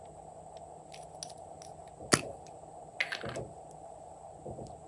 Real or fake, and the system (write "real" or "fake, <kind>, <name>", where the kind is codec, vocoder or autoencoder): real